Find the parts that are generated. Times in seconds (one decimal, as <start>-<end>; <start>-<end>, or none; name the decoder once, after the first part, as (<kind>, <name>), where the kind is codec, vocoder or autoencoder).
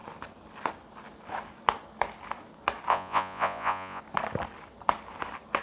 2.9-4.0 (vocoder, Vocos)